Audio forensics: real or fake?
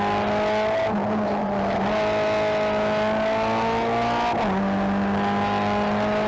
real